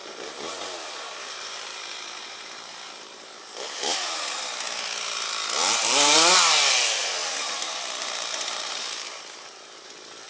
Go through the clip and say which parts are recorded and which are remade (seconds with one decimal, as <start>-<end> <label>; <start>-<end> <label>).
0.0-4.2 remade; 4.2-7.2 recorded; 7.2-9.8 remade; 9.8-10.3 recorded